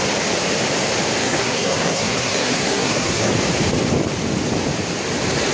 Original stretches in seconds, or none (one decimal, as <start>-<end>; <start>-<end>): 0.0-1.2; 3.3-5.5